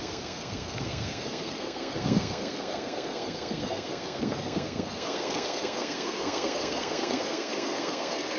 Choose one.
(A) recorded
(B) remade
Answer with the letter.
B